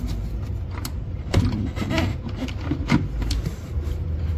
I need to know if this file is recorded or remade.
recorded